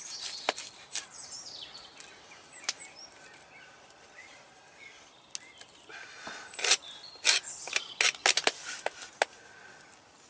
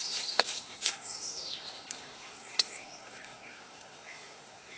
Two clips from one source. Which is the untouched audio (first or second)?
first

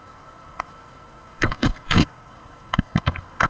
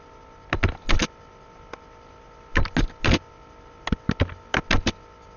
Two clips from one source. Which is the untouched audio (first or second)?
second